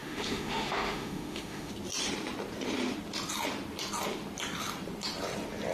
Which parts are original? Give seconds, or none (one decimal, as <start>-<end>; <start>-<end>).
1.7-5.7